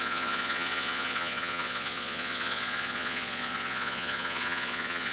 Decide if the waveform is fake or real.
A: fake